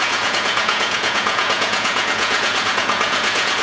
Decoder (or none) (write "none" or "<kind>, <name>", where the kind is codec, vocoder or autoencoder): vocoder, Vocos